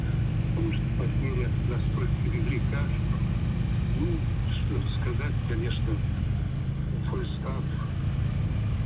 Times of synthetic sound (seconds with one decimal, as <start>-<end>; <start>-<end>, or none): none